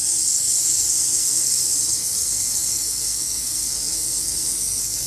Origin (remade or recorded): remade